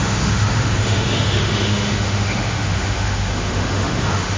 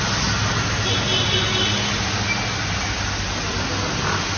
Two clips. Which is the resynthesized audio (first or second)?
first